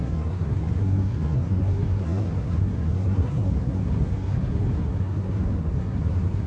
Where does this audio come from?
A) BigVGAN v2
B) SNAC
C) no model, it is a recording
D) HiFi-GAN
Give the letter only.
B